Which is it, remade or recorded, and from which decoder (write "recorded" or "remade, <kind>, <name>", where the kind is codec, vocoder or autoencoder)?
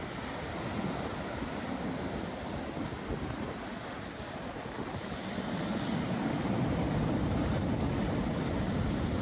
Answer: recorded